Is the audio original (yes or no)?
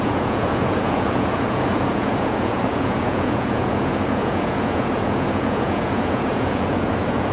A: no